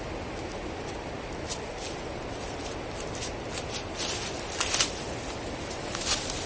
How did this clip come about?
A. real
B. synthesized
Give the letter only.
A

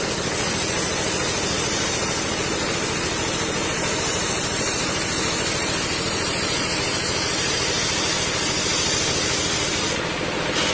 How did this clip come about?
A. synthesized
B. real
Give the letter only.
B